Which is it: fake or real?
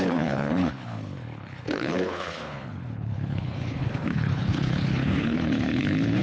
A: fake